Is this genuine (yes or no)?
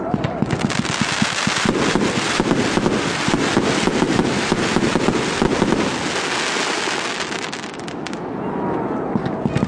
yes